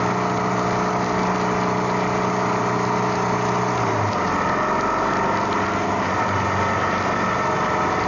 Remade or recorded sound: recorded